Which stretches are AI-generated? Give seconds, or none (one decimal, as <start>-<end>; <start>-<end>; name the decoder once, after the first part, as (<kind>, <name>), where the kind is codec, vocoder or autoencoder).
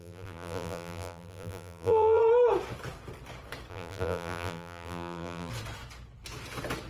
0.0-2.2 (vocoder, BigVGAN v2); 3.7-5.5